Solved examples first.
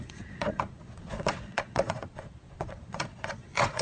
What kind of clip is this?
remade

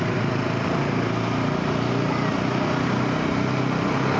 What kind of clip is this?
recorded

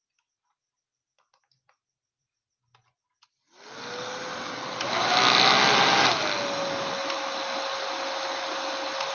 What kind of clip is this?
recorded